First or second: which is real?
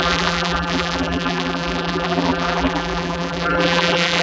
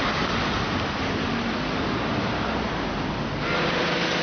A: second